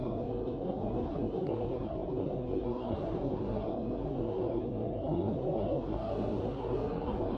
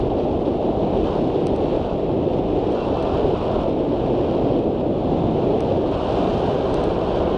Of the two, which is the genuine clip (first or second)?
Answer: second